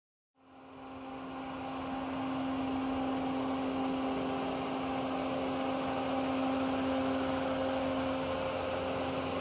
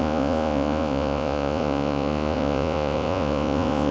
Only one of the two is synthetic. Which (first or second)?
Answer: second